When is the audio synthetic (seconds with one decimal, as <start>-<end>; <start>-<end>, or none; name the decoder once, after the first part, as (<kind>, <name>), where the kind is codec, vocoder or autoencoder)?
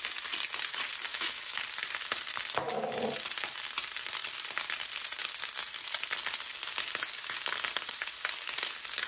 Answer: 1.1-1.6 (autoencoder, DAC-VAE)